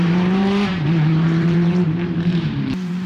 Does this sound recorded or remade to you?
remade